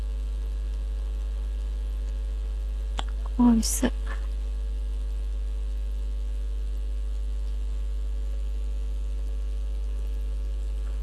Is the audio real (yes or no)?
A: yes